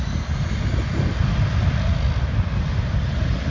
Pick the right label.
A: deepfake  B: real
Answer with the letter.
B